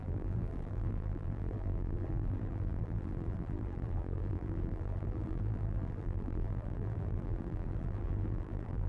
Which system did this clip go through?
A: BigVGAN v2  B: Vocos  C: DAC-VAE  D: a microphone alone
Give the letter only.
A